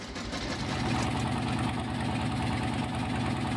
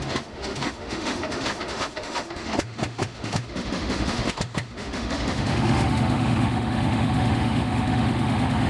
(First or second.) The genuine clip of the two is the first